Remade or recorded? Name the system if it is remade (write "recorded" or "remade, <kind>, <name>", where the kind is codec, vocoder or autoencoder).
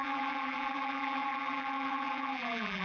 remade, vocoder, BigVGAN v2